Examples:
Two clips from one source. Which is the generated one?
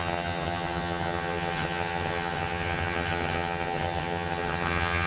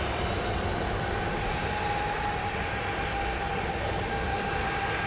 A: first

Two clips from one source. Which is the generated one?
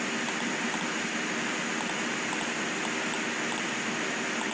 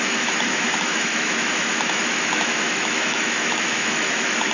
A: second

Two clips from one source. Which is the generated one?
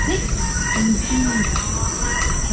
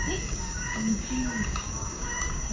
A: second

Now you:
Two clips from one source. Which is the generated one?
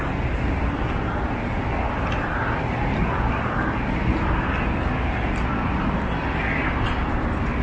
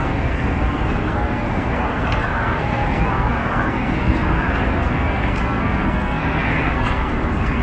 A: second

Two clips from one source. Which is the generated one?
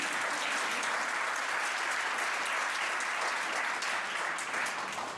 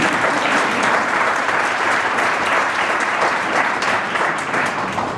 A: second